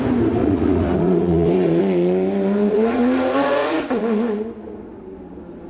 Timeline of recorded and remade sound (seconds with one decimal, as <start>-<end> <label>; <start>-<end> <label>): 0.0-0.4 recorded; 0.4-1.8 remade; 1.8-2.6 recorded; 2.6-4.0 remade; 4.0-5.7 recorded